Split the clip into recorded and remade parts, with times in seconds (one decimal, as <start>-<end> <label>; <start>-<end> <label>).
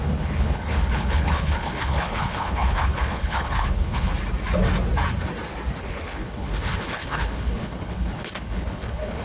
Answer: 0.0-4.1 remade; 4.1-5.8 recorded; 5.8-9.2 remade